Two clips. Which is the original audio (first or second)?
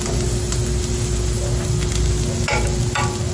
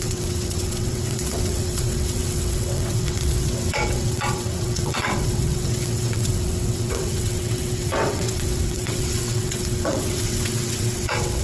first